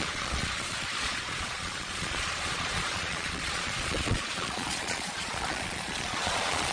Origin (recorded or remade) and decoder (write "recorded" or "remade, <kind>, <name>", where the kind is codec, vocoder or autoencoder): remade, vocoder, Vocos